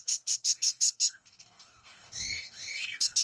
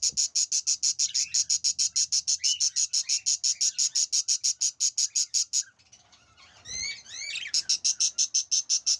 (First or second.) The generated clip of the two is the first